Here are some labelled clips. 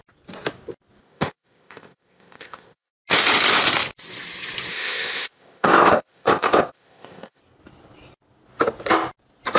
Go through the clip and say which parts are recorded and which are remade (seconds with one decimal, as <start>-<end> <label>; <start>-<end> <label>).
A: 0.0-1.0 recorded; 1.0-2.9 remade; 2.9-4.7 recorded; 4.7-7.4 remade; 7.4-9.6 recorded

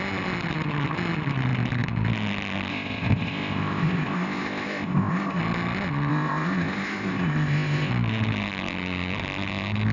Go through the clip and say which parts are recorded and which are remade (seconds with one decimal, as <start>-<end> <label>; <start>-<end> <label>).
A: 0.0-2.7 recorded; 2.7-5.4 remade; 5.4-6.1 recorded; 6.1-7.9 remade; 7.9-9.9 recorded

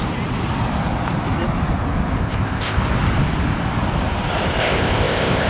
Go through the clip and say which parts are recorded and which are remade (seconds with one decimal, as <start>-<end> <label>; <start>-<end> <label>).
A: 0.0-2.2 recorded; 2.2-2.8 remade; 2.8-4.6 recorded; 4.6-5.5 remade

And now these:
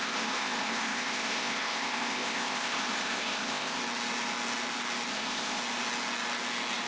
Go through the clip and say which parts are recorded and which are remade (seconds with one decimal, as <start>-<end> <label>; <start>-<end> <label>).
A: 0.0-3.8 remade; 3.8-5.1 recorded; 5.1-5.6 remade; 5.6-6.9 recorded